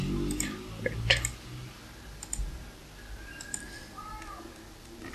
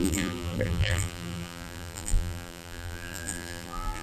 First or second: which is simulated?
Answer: second